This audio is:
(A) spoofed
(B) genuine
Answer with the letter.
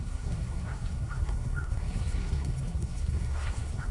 A